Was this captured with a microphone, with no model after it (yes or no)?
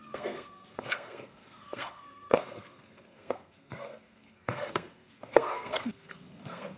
no